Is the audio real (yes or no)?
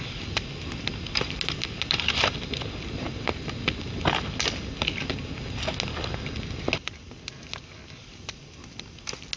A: yes